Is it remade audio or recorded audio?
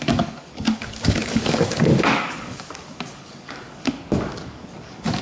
remade